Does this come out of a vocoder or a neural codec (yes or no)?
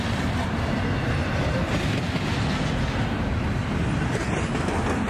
no